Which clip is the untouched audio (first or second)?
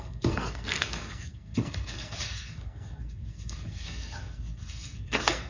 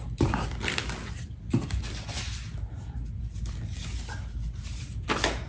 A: second